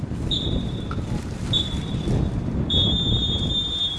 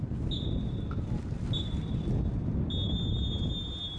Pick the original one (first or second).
second